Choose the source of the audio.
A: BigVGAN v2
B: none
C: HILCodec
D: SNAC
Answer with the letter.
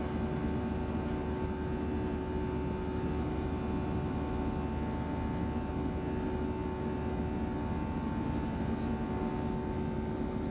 B